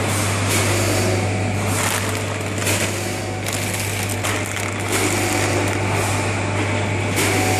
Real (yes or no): yes